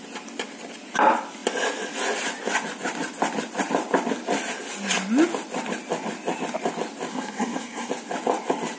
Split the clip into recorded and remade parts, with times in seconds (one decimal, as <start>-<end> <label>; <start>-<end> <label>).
0.0-7.1 recorded; 7.1-7.9 remade; 7.9-8.8 recorded